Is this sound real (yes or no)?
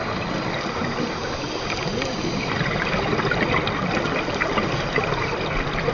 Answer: yes